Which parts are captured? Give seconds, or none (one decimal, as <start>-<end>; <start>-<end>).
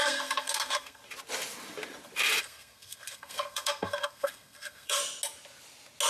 1.0-2.4; 5.0-6.1